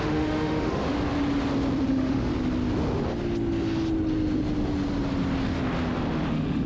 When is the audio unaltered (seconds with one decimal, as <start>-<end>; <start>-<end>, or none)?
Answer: 0.9-1.9; 2.3-6.3